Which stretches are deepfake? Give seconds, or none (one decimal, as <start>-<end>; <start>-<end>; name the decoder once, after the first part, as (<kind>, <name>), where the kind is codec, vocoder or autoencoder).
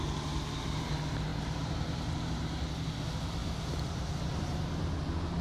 1.3-2.6 (vocoder, BigVGAN v2); 3.4-4.9